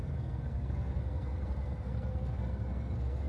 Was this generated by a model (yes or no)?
yes